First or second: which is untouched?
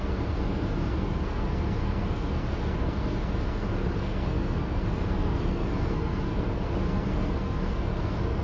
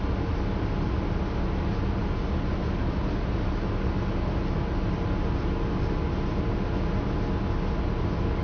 second